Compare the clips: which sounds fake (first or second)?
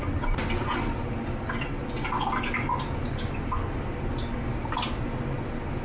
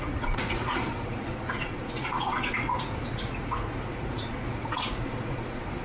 second